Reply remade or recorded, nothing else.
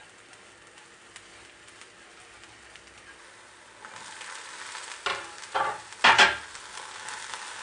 recorded